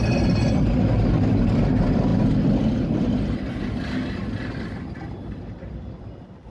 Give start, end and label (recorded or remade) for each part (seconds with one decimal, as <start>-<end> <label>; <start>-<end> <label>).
0.0-6.5 recorded